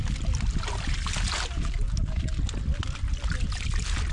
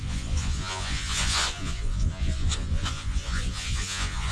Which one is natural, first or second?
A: first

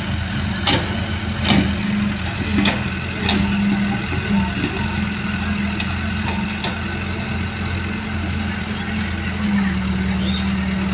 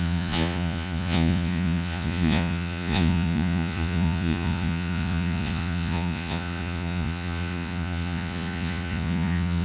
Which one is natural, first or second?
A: first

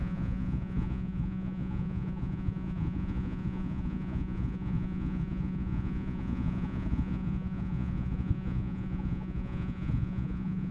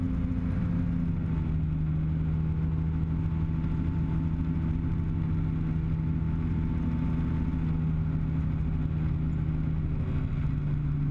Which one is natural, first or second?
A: second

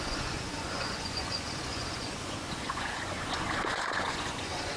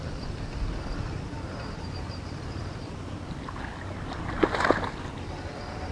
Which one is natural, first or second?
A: second